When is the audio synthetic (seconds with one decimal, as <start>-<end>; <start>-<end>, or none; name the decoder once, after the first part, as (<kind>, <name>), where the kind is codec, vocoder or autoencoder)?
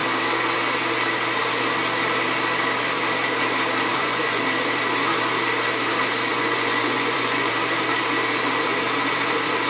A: 3.9-4.4 (vocoder, Vocos); 6.3-7.5